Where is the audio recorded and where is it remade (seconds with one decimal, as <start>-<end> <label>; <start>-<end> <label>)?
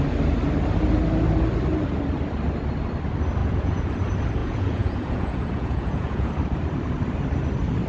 0.0-3.4 recorded; 3.4-3.9 remade; 3.9-4.4 recorded; 4.4-6.3 remade; 6.3-7.9 recorded